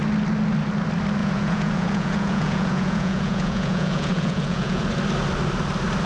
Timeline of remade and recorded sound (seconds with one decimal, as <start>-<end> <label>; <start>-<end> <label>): 0.0-1.2 recorded; 1.2-4.9 remade; 4.9-6.1 recorded